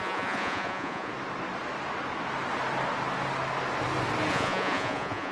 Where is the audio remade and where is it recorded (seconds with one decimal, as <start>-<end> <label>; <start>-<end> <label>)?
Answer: 0.0-1.1 remade; 1.1-4.3 recorded; 4.3-5.3 remade